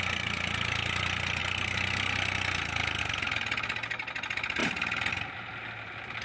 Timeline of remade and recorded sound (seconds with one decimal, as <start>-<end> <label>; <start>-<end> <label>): 0.0-6.2 recorded